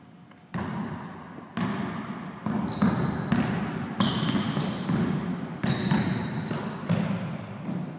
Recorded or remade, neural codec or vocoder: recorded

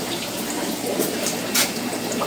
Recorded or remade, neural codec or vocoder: recorded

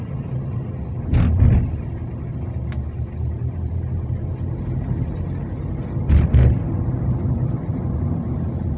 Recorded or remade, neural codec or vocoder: recorded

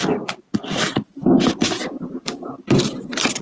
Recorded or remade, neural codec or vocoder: recorded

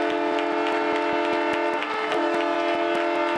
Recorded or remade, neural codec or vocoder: recorded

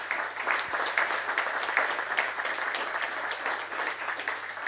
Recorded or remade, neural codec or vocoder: recorded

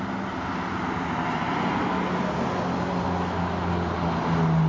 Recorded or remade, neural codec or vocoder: recorded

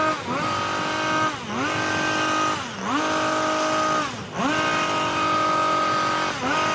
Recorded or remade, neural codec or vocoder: recorded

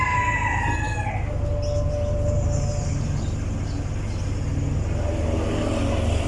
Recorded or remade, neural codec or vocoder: recorded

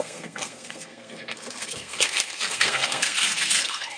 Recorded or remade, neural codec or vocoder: remade, codec, SNAC